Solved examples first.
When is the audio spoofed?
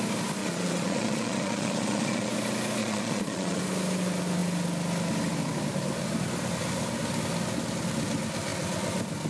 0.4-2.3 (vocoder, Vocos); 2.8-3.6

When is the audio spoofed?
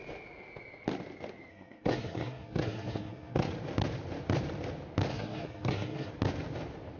1.5-3.5 (codec, SNAC); 5.1-6.1